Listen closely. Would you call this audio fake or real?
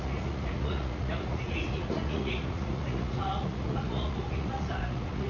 fake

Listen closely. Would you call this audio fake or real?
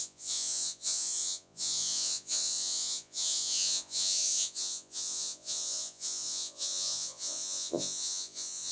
fake